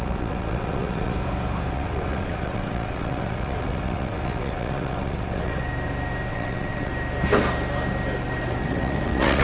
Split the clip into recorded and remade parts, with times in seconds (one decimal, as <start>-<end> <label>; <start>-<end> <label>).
0.0-1.1 remade; 1.1-1.7 recorded; 1.7-5.7 remade; 5.7-6.3 recorded; 6.3-6.9 remade; 6.9-8.5 recorded; 8.5-9.4 remade